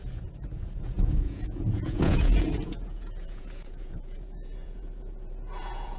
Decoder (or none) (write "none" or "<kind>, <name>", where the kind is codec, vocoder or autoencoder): vocoder, Vocos